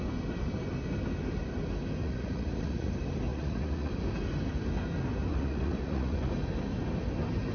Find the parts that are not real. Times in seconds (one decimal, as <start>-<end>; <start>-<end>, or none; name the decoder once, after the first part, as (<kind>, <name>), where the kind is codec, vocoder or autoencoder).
2.0-2.9 (vocoder, Vocos); 3.3-3.9; 5.3-6.3